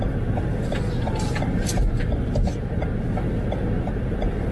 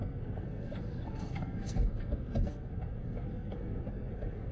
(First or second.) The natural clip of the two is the first